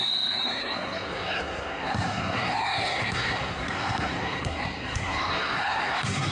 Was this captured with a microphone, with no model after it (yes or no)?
no